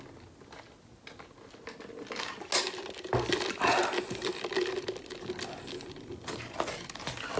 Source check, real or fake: real